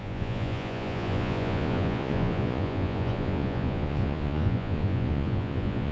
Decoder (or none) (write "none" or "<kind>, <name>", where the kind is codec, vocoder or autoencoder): vocoder, Vocos